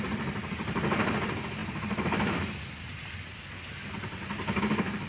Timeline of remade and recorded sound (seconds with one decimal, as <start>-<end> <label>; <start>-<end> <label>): 0.0-5.1 recorded